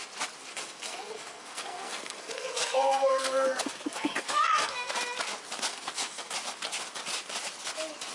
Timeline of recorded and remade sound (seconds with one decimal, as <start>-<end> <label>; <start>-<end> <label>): 0.0-0.5 recorded; 0.5-4.9 remade; 4.9-5.7 recorded; 5.7-6.3 remade; 6.3-8.1 recorded